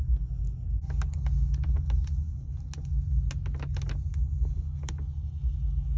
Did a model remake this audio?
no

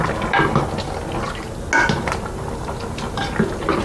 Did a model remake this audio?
no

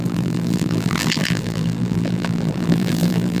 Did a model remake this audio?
yes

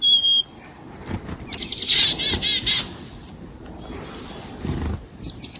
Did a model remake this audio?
no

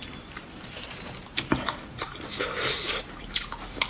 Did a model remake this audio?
yes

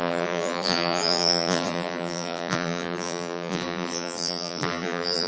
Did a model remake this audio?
yes